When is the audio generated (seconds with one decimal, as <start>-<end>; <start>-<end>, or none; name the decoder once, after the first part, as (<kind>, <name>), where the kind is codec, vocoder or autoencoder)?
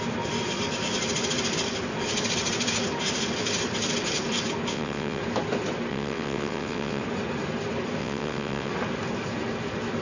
4.7-5.2 (vocoder, WaveNeXt); 5.9-7.0; 8.0-8.7